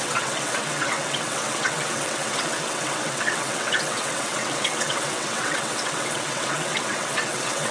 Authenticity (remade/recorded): remade